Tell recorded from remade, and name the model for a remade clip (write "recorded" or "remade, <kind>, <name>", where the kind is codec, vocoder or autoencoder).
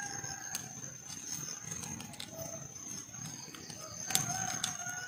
recorded